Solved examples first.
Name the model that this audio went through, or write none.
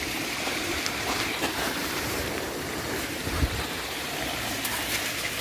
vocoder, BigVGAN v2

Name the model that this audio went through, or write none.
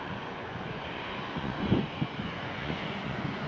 vocoder, Vocos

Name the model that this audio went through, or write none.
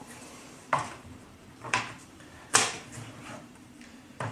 vocoder, BigVGAN v2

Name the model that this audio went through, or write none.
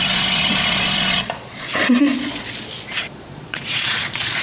vocoder, Vocos